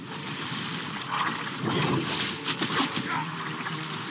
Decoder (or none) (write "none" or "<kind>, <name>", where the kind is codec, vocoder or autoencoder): vocoder, BigVGAN v2